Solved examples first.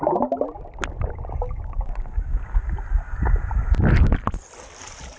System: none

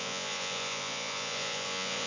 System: vocoder, Vocos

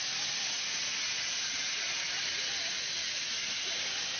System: none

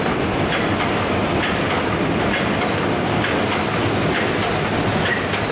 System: none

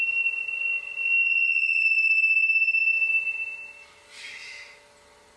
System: none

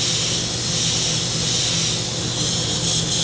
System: none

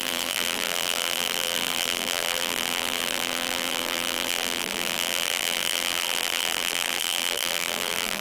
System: vocoder, BigVGAN v2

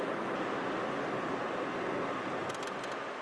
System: none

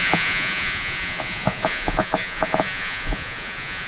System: vocoder, Vocos